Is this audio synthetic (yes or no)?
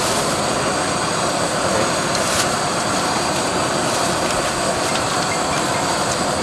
no